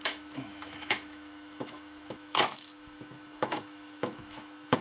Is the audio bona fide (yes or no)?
no